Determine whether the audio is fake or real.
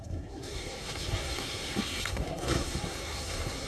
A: fake